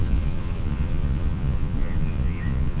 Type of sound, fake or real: fake